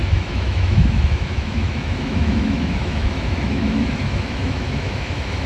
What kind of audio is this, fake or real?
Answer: fake